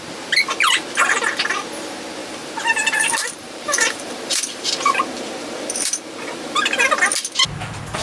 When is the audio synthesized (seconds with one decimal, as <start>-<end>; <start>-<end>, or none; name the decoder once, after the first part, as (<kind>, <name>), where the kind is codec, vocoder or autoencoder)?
2.2-7.0 (vocoder, BigVGAN v2)